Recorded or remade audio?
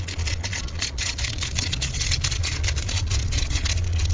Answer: remade